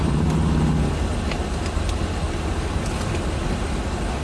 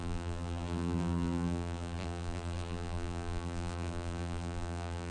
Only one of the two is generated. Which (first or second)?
second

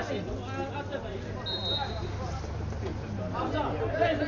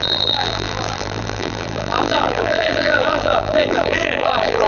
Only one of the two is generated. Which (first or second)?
second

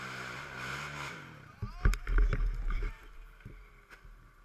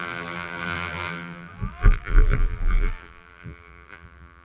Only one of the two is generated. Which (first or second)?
second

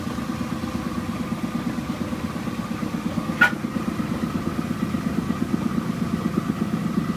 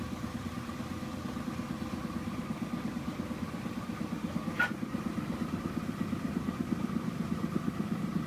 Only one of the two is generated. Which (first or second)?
second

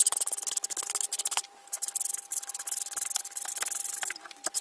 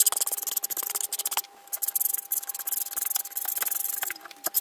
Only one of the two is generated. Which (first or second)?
first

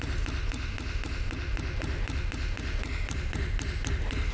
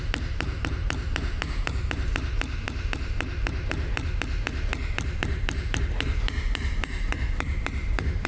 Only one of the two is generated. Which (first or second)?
second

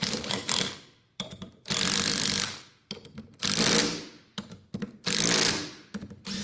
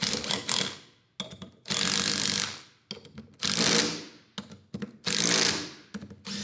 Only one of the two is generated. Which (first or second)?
first